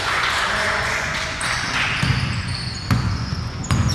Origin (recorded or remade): remade